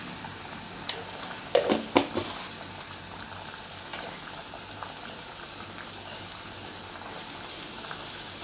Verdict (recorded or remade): recorded